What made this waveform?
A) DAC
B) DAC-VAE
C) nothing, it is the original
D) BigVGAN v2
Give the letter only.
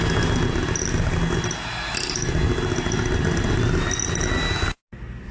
C